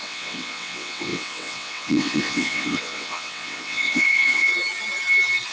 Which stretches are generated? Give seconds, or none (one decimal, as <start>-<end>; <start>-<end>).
0.0-4.5